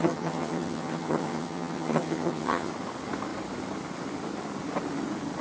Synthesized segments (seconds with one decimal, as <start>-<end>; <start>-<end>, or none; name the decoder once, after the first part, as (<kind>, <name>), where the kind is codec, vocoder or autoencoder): 0.0-2.7 (vocoder, HiFi-GAN)

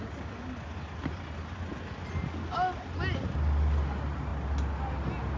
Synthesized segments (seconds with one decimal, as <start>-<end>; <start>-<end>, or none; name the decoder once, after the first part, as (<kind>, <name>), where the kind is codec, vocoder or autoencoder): none

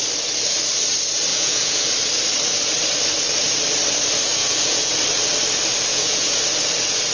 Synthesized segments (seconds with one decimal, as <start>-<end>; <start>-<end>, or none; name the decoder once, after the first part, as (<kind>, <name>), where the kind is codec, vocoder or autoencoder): 1.3-1.9 (vocoder, Vocos); 4.4-4.9; 5.9-6.4

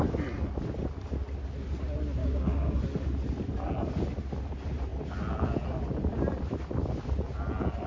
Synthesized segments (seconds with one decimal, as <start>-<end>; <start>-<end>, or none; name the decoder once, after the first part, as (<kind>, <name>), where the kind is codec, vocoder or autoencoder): 2.2-2.8 (codec, DAC)

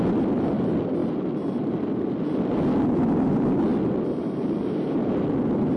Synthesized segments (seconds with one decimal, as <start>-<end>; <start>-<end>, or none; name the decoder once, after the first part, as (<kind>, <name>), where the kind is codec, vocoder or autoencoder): none

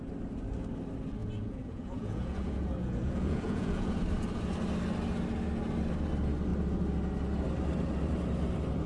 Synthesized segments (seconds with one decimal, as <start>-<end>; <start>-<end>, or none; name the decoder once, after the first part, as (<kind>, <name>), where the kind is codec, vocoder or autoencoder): 1.2-4.0 (vocoder, Vocos)